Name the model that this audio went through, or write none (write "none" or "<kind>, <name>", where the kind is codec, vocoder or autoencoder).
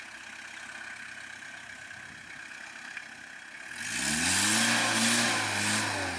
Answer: none